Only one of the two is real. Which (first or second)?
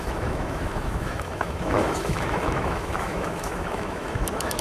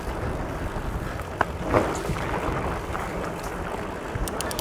second